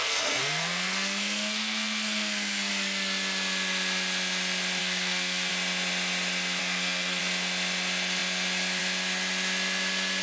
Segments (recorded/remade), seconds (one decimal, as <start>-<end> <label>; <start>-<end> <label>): 0.0-2.7 remade; 2.7-4.8 recorded; 4.8-5.5 remade; 5.5-6.6 recorded; 6.6-7.2 remade; 7.2-10.2 recorded